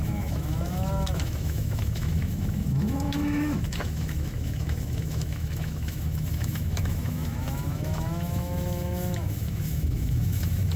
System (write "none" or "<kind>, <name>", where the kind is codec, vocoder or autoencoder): autoencoder, DAC-VAE